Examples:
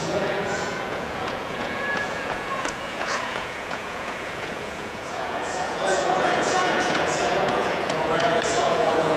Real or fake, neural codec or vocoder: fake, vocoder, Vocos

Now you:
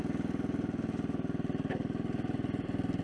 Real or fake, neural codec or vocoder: real